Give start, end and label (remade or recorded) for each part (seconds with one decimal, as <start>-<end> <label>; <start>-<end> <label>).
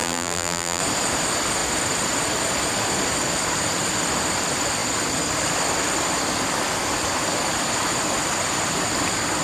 0.0-0.8 remade; 0.8-9.4 recorded